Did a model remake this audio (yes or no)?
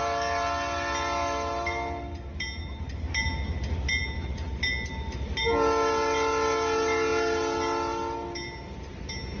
no